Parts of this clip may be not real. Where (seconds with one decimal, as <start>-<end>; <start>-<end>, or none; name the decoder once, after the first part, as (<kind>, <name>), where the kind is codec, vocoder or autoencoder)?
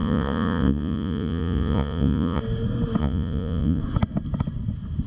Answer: 0.0-2.4 (vocoder, Vocos); 3.0-3.8